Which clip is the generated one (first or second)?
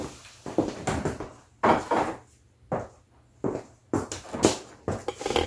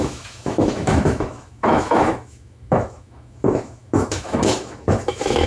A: second